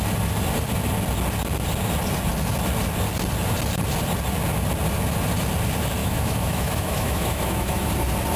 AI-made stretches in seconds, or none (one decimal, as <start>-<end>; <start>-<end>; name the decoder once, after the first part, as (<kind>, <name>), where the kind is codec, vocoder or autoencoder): 6.0-7.9 (autoencoder, DAC-VAE)